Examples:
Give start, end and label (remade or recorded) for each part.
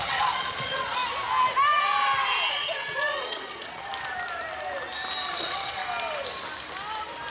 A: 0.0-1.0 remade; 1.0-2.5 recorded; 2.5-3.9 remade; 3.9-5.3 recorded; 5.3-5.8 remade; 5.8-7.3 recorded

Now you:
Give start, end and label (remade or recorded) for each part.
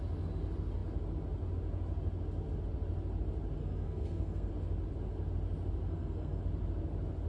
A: 0.0-3.6 recorded; 3.6-4.5 remade; 4.5-5.9 recorded; 5.9-6.4 remade; 6.4-7.3 recorded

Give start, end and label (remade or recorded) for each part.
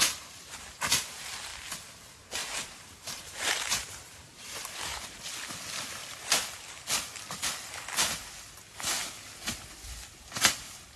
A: 0.0-2.4 recorded; 2.4-5.2 remade; 5.2-11.0 recorded